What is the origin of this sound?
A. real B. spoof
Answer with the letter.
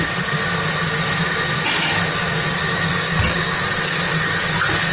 A